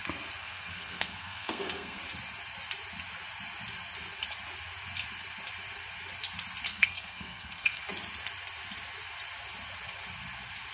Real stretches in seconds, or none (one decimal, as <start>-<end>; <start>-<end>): 0.0-0.4; 2.0-6.7; 7.8-10.7